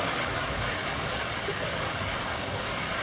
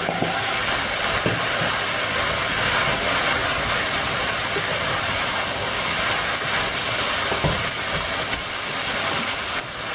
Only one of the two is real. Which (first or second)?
second